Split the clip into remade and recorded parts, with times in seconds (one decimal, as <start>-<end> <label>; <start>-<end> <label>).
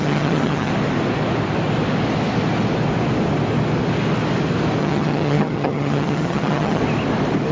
0.0-0.7 remade; 0.7-4.8 recorded; 4.8-6.8 remade; 6.8-7.5 recorded